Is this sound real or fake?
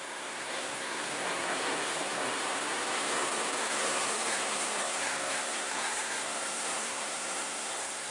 fake